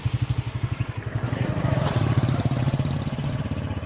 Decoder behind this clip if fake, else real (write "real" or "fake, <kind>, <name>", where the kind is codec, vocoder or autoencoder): real